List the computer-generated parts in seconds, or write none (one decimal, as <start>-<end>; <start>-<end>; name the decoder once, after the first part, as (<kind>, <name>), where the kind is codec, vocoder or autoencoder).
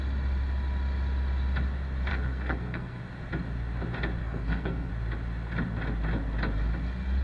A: 2.1-3.0 (codec, SNAC); 4.2-4.9